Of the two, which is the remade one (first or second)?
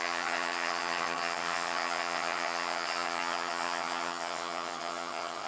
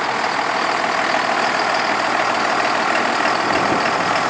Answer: first